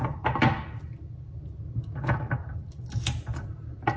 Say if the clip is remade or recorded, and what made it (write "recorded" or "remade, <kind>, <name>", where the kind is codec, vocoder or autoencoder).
recorded